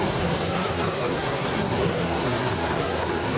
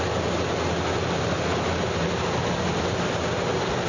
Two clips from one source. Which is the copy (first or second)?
first